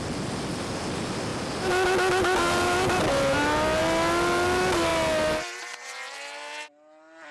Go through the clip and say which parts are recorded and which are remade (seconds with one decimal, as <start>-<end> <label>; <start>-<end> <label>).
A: 0.0-7.3 recorded